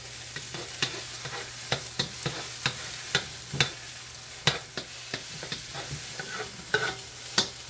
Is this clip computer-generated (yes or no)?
no